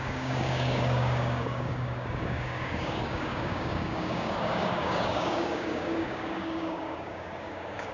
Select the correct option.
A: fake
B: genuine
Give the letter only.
A